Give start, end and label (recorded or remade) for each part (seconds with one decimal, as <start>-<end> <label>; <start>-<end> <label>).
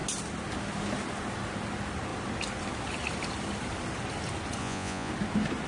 0.0-4.6 recorded; 4.6-5.1 remade; 5.1-5.7 recorded